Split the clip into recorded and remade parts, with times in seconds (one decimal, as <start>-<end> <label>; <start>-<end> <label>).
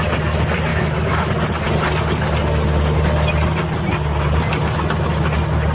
0.0-0.7 recorded; 0.7-1.3 remade; 1.3-5.7 recorded